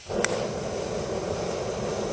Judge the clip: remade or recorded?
recorded